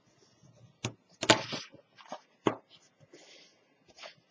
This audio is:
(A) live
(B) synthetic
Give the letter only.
A